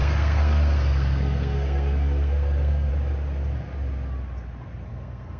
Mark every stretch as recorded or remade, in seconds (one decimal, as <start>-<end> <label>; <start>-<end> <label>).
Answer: 0.0-2.9 remade; 2.9-4.9 recorded; 4.9-5.4 remade